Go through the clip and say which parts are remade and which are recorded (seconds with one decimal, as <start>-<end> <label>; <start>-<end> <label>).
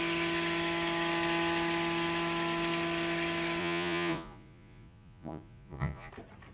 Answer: 0.0-3.6 recorded; 3.6-6.1 remade; 6.1-6.5 recorded